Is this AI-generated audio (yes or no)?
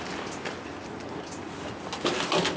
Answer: no